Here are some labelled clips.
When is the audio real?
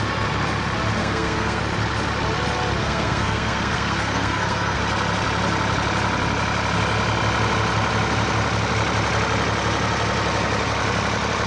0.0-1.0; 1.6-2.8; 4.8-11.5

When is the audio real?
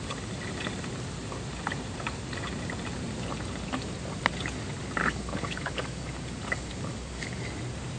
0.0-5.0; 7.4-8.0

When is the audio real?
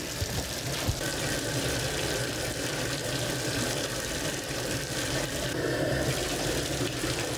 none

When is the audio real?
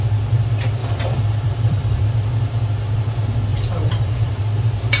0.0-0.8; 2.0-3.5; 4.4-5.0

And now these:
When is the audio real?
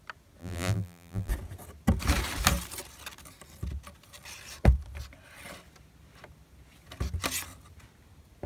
0.0-0.4; 1.3-8.5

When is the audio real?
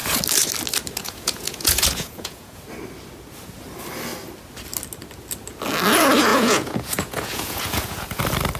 0.0-1.0; 2.6-6.3; 8.2-8.6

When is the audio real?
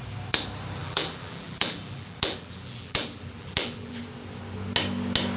0.0-0.8; 4.0-5.4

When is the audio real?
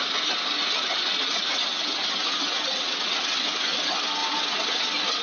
0.0-1.7; 3.8-4.2; 4.8-5.2